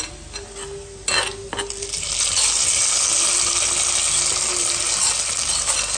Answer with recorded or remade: recorded